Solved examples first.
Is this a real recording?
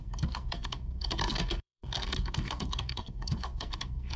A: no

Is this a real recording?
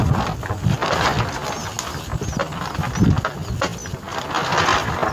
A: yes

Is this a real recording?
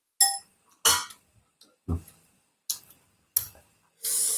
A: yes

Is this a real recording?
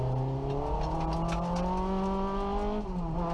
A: yes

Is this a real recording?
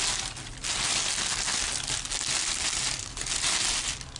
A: yes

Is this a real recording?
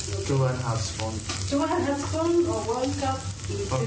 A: yes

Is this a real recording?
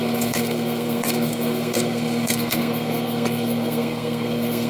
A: no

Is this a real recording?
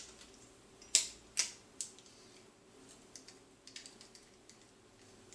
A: yes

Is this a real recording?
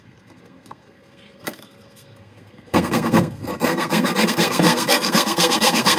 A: no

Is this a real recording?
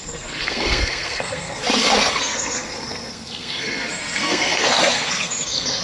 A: no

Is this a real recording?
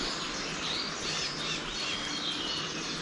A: yes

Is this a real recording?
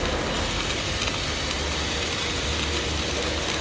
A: yes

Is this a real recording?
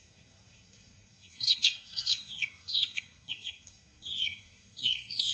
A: no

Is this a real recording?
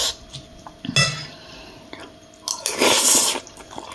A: yes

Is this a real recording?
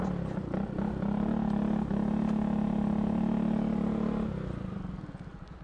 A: yes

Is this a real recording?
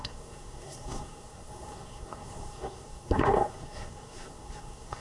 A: no